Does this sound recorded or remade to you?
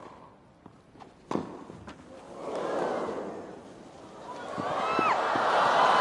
recorded